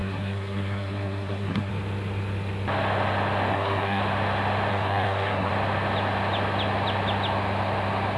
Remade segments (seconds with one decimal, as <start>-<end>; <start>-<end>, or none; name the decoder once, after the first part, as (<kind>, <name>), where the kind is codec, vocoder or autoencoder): 0.0-1.7 (codec, SNAC); 3.5-4.0; 4.7-5.5